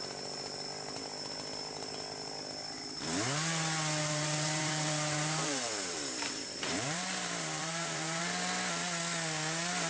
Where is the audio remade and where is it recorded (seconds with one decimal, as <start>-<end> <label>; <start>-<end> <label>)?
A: 0.0-4.0 recorded; 4.0-8.2 remade; 8.2-9.9 recorded